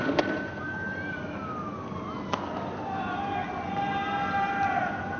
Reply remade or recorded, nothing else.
recorded